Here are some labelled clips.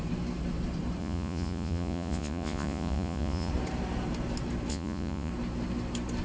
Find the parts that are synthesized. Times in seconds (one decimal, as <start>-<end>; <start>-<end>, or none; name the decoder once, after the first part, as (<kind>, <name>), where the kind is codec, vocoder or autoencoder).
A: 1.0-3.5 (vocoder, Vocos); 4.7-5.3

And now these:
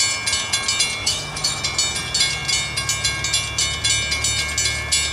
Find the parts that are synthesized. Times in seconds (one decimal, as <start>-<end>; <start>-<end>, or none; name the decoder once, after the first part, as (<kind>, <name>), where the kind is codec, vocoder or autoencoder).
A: 1.0-1.6 (autoencoder, DAC-VAE)

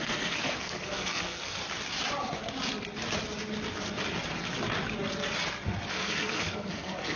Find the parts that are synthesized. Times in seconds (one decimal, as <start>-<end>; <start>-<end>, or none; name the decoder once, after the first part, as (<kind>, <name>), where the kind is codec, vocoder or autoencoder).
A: 0.0-1.6 (codec, SNAC); 5.9-7.2